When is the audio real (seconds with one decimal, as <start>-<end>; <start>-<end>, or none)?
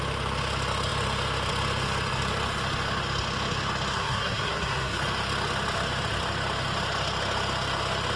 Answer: 0.0-3.9; 5.0-8.2